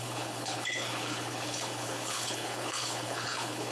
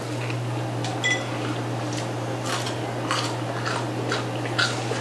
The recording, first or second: second